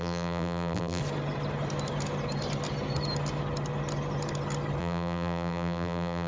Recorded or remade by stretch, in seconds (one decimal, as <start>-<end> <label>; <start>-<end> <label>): 0.0-1.0 remade; 1.0-4.8 recorded; 4.8-6.3 remade

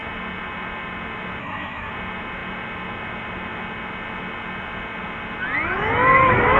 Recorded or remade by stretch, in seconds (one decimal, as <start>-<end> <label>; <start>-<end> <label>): 0.0-1.4 recorded; 1.4-1.9 remade; 1.9-6.6 recorded

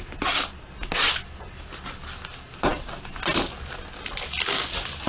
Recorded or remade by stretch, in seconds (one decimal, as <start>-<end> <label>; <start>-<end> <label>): 0.0-5.1 recorded